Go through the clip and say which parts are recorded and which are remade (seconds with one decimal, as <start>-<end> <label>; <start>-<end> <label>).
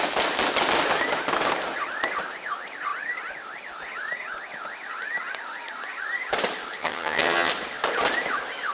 0.0-6.8 recorded; 6.8-7.5 remade; 7.5-8.7 recorded